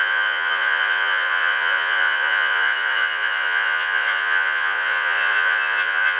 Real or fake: fake